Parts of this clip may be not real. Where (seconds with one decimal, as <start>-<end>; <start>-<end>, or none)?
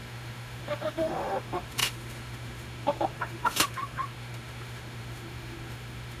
0.0-6.2